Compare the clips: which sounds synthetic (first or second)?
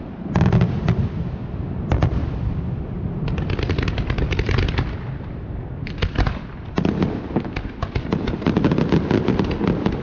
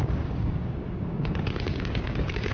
second